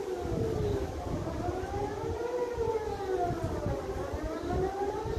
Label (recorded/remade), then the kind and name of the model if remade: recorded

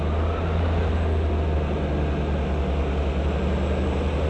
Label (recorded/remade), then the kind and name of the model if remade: recorded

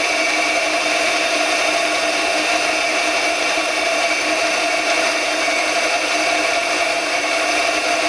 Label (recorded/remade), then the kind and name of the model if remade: remade, vocoder, BigVGAN v2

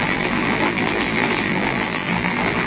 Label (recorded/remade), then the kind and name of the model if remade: remade, vocoder, BigVGAN v2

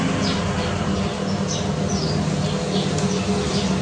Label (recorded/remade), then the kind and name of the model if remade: recorded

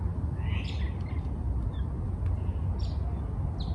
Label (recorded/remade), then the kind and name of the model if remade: recorded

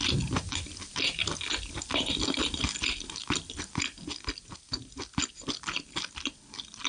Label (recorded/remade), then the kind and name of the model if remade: recorded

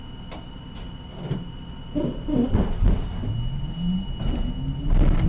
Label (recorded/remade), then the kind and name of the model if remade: recorded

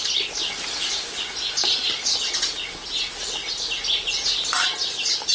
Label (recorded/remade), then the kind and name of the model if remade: recorded